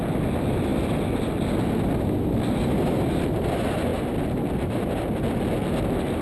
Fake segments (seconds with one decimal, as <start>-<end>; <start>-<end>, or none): none